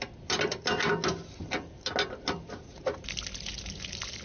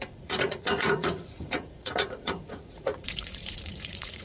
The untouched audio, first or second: first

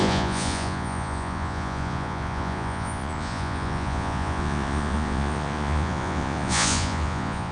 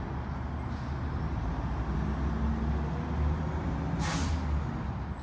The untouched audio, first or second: second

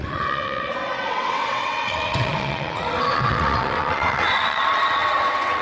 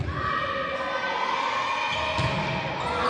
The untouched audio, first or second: second